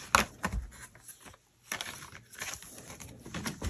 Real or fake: real